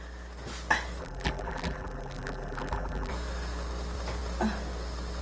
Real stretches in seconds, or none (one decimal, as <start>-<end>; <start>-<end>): 0.0-1.0; 3.1-5.2